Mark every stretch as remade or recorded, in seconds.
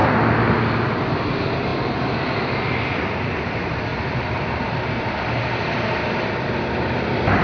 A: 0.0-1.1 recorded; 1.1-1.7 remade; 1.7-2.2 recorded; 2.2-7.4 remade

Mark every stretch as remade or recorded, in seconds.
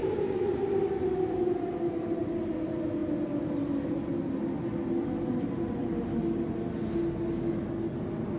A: 0.0-0.6 remade; 0.6-8.4 recorded